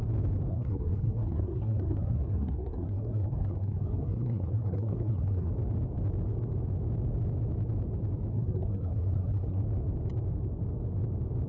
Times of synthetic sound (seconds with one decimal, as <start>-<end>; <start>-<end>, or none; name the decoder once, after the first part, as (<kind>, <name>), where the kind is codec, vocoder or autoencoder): 0.5-5.5 (codec, SNAC); 8.3-9.6